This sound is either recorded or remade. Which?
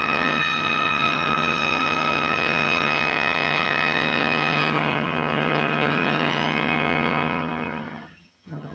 remade